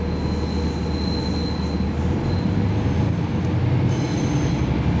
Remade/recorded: recorded